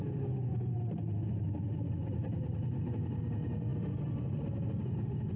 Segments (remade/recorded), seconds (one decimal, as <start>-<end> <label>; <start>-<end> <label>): 0.0-5.4 recorded